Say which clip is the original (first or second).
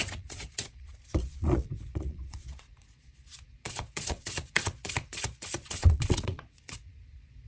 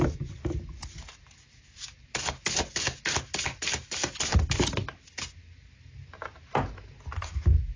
second